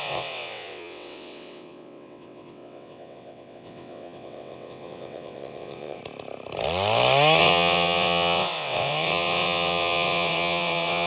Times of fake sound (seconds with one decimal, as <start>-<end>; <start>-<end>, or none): 0.0-6.0; 7.4-11.1